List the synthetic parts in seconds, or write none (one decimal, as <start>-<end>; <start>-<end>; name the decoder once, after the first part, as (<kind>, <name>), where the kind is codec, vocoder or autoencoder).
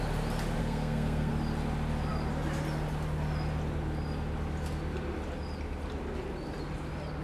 0.6-1.3 (codec, SNAC)